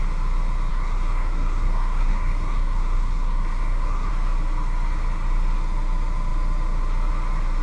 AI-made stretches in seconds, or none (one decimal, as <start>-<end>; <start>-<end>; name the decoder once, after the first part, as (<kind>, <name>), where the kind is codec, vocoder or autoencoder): 0.7-4.1 (codec, SNAC)